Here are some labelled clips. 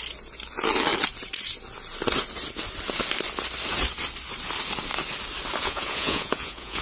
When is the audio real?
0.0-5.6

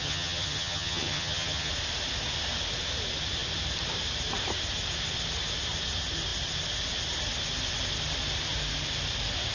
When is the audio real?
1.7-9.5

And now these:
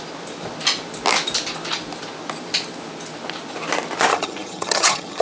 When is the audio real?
0.0-4.1

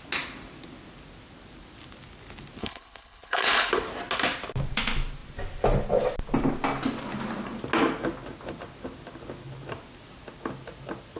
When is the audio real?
0.0-2.6; 3.7-11.2

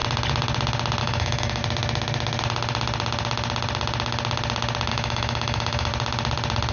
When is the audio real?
0.0-1.0; 1.6-4.9; 5.9-6.7